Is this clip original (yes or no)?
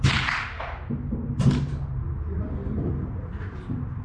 yes